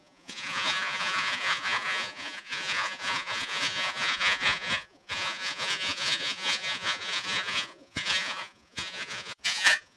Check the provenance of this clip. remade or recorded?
remade